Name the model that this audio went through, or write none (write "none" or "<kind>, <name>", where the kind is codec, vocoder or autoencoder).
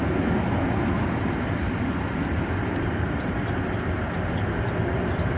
vocoder, BigVGAN v2